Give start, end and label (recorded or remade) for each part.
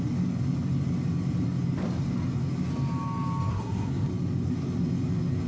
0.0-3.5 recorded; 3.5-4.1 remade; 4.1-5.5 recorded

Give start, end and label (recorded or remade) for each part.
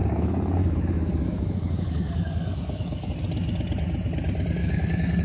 0.0-3.1 remade; 3.1-4.6 recorded; 4.6-5.2 remade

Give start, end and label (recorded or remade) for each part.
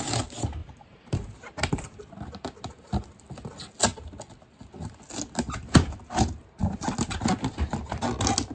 0.0-0.6 recorded; 0.6-2.0 remade; 2.0-8.5 recorded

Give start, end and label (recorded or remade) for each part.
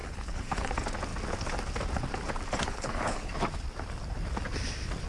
0.0-0.7 remade; 0.7-2.6 recorded; 2.6-3.3 remade; 3.3-5.1 recorded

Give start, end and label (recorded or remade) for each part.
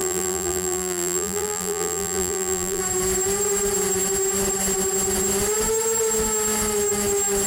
0.0-2.8 remade; 2.8-7.5 recorded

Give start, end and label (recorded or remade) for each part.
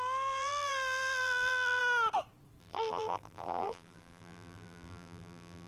0.0-1.8 remade; 1.8-2.6 recorded; 2.6-5.7 remade